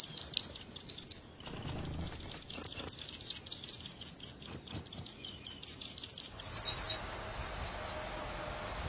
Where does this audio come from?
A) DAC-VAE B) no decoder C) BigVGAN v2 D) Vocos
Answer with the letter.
B